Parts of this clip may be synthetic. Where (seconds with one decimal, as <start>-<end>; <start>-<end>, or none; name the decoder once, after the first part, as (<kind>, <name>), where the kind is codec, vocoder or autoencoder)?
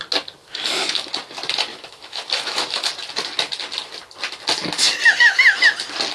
0.4-1.1 (autoencoder, DAC-VAE); 1.7-2.9